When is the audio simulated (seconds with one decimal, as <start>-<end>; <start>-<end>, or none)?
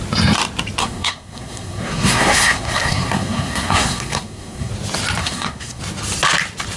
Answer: 0.8-4.7; 5.2-5.8